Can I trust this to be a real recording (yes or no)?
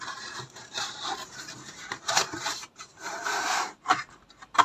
no